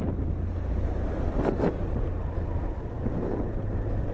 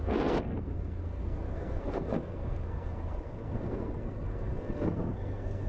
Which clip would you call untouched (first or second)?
first